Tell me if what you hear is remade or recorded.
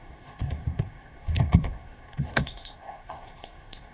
remade